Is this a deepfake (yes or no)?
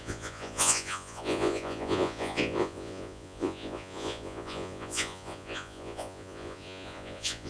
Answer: yes